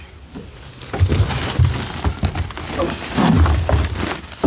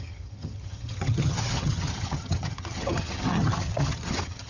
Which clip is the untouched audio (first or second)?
first